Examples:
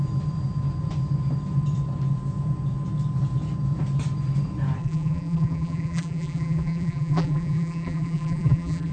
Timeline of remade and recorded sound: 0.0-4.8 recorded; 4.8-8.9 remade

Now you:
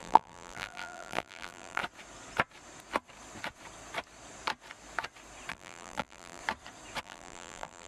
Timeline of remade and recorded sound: 0.0-1.8 remade; 1.8-5.5 recorded; 5.5-6.4 remade; 6.4-7.0 recorded; 7.0-7.9 remade

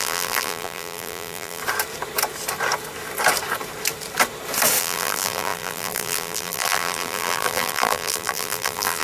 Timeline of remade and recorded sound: 0.0-1.6 remade; 1.6-4.8 recorded; 4.8-9.0 remade

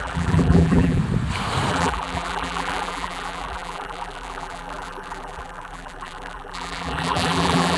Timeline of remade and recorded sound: 0.0-1.0 remade; 1.0-1.7 recorded; 1.7-7.8 remade